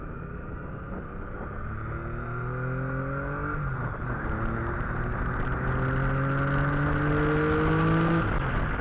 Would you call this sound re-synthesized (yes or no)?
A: no